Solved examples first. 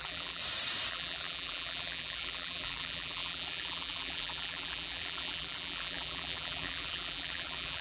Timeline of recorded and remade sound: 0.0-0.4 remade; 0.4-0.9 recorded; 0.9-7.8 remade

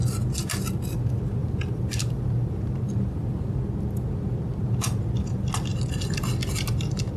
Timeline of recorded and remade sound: 0.0-1.4 recorded; 1.4-2.9 remade; 2.9-7.2 recorded

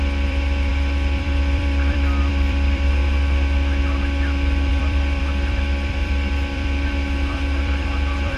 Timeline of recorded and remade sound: 0.0-3.0 remade; 3.0-4.7 recorded; 4.7-8.4 remade